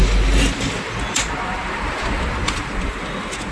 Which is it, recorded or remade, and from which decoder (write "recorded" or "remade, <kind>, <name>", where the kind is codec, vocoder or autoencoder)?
recorded